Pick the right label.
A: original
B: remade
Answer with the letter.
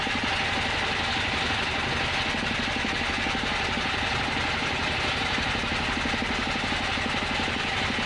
A